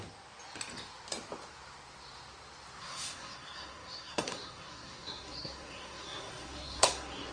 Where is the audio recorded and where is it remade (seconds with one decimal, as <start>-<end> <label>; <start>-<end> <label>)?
0.0-2.8 recorded; 2.8-7.3 remade